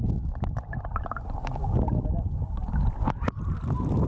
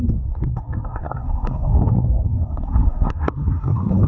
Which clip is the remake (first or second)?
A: second